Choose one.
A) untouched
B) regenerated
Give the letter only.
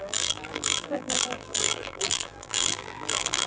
B